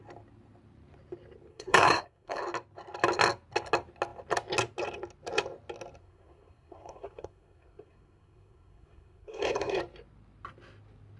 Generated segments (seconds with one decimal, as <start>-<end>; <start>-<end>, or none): 1.5-2.4; 6.0-9.8